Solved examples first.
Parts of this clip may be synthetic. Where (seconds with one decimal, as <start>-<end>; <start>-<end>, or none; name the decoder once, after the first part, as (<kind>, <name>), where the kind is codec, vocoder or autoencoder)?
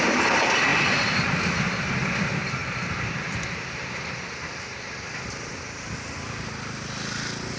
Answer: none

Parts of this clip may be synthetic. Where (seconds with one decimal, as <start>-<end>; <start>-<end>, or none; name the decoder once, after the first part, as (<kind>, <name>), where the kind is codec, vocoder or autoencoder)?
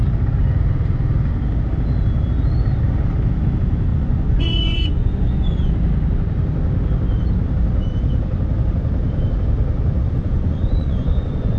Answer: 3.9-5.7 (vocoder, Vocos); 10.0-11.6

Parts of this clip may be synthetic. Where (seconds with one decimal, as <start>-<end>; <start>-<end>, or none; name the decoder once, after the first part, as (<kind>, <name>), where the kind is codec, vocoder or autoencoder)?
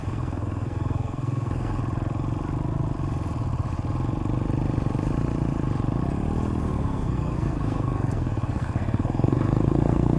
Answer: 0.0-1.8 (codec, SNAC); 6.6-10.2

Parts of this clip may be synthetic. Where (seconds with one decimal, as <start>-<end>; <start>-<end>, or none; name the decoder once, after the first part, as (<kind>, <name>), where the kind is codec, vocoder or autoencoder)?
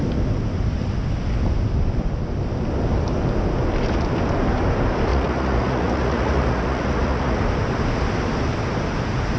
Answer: 5.1-7.4 (vocoder, Vocos)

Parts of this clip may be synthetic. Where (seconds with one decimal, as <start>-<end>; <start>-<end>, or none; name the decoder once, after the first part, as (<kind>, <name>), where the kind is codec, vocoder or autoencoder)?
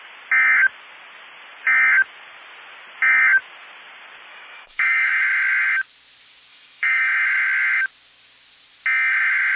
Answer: 4.3-5.1 (autoencoder, DAC-VAE); 6.5-7.0